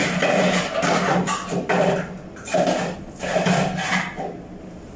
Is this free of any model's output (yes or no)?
yes